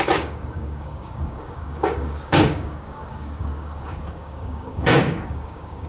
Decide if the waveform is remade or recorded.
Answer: remade